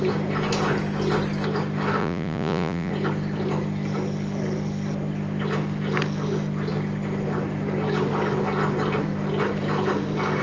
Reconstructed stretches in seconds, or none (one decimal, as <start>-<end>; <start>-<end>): 2.0-2.9